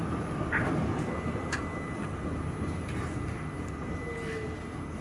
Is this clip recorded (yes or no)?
yes